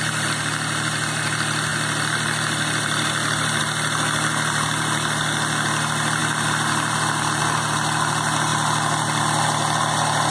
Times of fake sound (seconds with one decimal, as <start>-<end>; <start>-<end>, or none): none